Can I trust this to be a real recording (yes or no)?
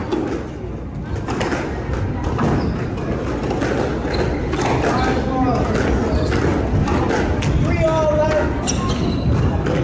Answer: yes